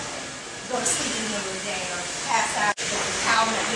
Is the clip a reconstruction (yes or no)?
no